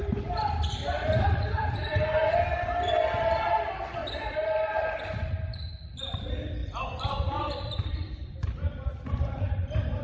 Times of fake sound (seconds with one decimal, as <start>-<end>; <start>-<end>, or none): 0.0-2.2; 4.0-5.3; 6.6-8.3